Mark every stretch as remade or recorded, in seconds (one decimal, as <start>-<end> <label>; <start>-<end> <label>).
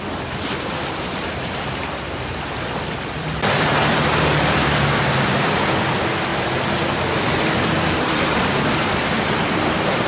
0.0-6.3 remade; 6.3-7.9 recorded; 7.9-10.1 remade